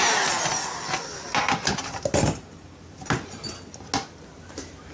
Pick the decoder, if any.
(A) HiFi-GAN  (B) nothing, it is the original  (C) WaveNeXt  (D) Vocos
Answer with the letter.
B